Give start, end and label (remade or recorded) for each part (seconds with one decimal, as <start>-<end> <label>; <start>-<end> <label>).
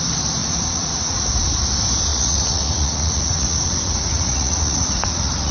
0.0-0.4 recorded; 0.4-1.2 remade; 1.2-2.1 recorded; 2.1-5.5 remade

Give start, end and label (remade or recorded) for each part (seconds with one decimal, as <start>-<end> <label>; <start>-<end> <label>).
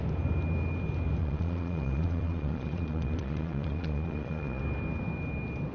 0.0-1.2 recorded; 1.2-4.6 remade; 4.6-5.7 recorded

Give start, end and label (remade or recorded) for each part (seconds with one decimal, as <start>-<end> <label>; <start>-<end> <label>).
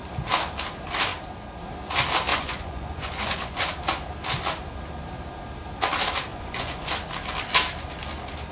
0.0-2.3 recorded; 2.3-3.6 remade; 3.6-6.3 recorded; 6.3-6.9 remade; 6.9-8.5 recorded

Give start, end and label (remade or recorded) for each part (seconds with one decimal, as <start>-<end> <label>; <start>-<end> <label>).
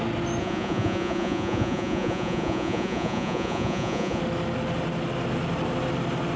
0.0-0.4 recorded; 0.4-4.2 remade; 4.2-6.4 recorded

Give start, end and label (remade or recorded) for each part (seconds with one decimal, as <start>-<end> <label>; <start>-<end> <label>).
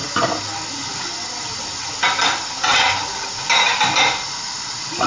0.0-5.1 recorded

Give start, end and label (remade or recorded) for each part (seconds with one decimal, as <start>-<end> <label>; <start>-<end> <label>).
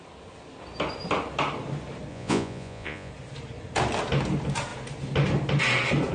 0.0-2.1 recorded; 2.1-3.1 remade; 3.1-6.1 recorded